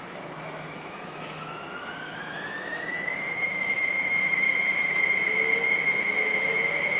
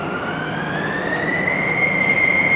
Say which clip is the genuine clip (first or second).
second